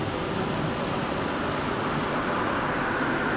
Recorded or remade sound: recorded